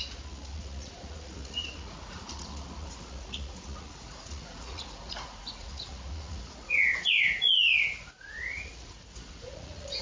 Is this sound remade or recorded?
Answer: remade